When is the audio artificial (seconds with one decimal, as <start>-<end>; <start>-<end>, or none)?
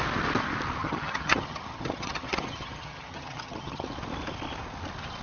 0.8-3.9